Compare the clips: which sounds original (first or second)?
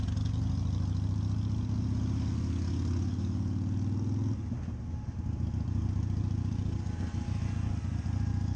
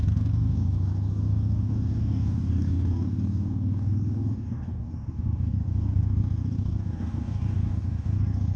first